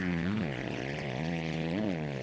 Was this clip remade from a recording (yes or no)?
yes